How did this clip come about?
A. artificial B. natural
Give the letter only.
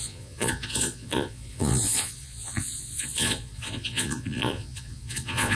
A